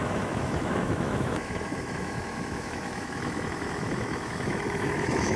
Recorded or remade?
remade